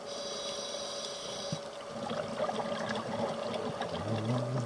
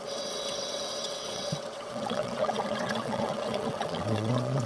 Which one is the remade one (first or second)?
second